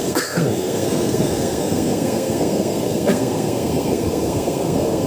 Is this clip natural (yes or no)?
no